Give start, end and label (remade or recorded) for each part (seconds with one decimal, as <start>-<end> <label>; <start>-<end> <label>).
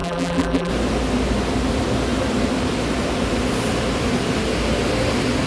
0.0-0.7 remade; 0.7-5.5 recorded